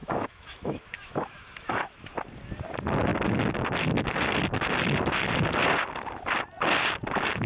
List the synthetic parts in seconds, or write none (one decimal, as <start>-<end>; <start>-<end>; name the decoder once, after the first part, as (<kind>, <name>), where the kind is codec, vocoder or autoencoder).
0.0-2.0 (autoencoder, DAC-VAE)